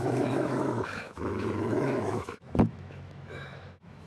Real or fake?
fake